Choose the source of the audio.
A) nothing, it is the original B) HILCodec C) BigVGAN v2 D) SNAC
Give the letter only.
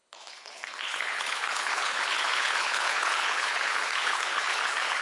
B